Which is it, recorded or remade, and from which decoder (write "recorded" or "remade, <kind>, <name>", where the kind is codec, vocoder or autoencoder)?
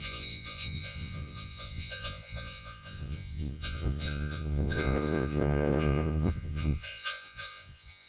remade, vocoder, Vocos